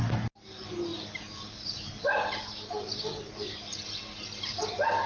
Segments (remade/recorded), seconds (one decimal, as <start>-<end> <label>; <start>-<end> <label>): 0.0-5.1 recorded